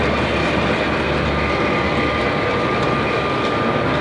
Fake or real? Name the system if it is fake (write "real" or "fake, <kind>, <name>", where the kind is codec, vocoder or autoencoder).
real